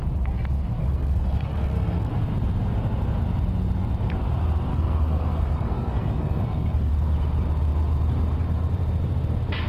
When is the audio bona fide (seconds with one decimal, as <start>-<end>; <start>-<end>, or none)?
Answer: 0.0-0.8; 2.1-4.7; 6.9-9.7